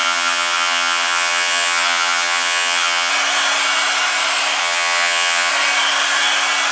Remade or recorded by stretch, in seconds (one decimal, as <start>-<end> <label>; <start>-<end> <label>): 0.0-3.1 remade; 3.1-4.6 recorded; 4.6-5.5 remade; 5.5-6.7 recorded